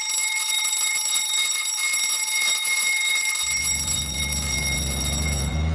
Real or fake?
fake